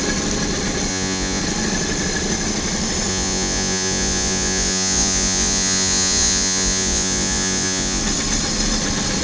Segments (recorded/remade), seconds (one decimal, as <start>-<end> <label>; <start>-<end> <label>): 0.0-0.9 recorded; 0.9-1.4 remade; 1.4-3.1 recorded; 3.1-8.0 remade; 8.0-9.2 recorded